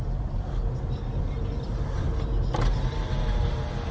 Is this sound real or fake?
real